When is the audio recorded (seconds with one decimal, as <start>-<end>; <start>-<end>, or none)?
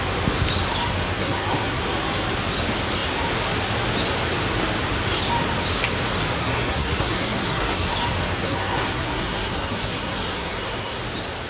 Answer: 0.0-1.2; 1.8-6.4; 7.9-8.4; 11.0-11.5